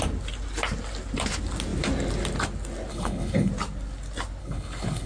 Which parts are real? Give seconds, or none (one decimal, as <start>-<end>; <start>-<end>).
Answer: 0.0-2.9; 3.5-4.4